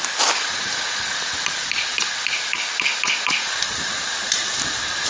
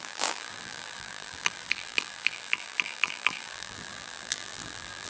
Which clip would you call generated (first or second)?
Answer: second